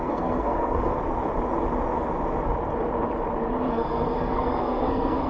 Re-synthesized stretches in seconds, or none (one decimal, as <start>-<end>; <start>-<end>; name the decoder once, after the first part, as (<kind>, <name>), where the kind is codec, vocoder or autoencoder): 0.0-0.9 (codec, SNAC); 3.7-5.3